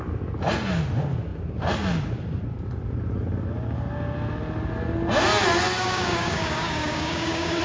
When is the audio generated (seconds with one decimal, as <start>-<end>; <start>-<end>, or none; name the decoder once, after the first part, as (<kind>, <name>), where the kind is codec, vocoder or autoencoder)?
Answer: 5.8-7.6 (codec, DAC)